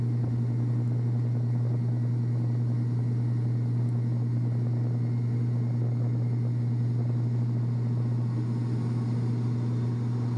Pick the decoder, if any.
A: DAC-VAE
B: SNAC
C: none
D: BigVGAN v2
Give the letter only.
C